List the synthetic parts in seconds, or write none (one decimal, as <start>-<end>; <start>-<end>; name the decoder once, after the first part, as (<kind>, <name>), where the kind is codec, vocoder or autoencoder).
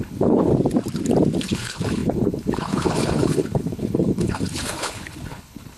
0.0-0.5 (codec, HILCodec); 1.4-5.8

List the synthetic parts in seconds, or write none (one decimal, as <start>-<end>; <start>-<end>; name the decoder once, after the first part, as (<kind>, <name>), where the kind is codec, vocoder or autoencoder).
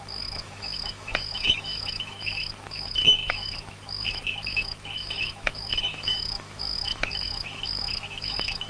0.0-8.7 (autoencoder, DAC-VAE)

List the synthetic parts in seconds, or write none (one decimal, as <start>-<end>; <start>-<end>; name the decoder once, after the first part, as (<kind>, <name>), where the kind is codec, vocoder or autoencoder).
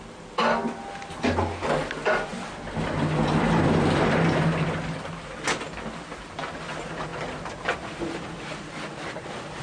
0.0-0.4 (vocoder, BigVGAN v2); 1.8-2.3; 6.1-9.6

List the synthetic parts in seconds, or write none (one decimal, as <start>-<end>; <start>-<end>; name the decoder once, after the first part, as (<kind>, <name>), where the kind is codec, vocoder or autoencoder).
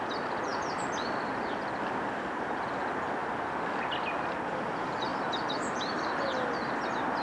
5.1-6.1 (vocoder, BigVGAN v2)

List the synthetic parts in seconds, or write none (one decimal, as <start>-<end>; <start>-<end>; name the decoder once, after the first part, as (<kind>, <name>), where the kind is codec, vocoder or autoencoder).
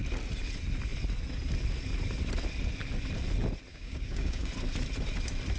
3.7-4.5 (codec, DAC)